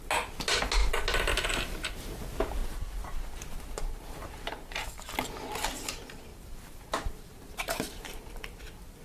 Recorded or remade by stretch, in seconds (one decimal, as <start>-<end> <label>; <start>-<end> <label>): 0.0-2.6 recorded; 2.6-5.1 remade; 5.1-6.3 recorded; 6.3-8.6 remade; 8.6-9.0 recorded